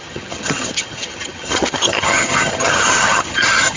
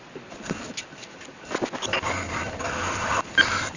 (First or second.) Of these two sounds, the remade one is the first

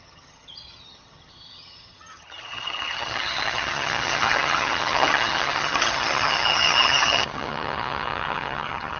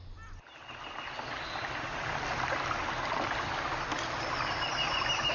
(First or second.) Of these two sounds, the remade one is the first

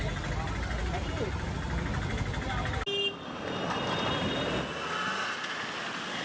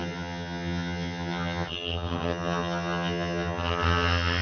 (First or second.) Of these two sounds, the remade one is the second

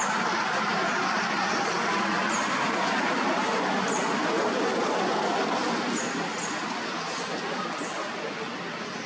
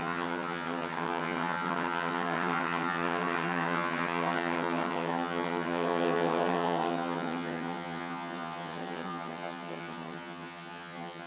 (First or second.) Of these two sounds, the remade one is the second